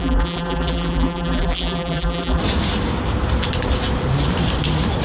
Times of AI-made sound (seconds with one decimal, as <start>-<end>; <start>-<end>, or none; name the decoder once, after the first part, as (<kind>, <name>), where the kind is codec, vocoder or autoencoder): 0.0-2.4 (vocoder, BigVGAN v2)